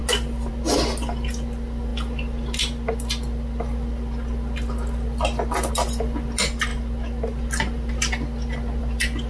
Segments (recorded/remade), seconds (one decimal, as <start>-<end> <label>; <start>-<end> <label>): 0.0-9.3 recorded